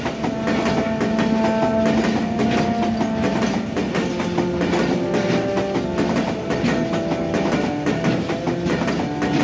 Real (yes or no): yes